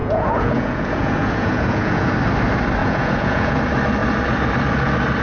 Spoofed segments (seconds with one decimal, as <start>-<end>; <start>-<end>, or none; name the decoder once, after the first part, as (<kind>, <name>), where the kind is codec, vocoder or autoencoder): 0.0-2.1 (vocoder, Vocos); 2.8-3.6